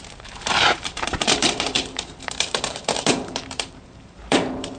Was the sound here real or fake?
fake